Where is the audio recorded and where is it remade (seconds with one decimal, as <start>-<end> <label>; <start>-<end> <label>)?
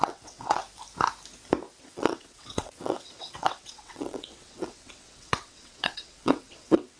0.0-0.6 remade; 0.6-1.8 recorded; 1.8-7.0 remade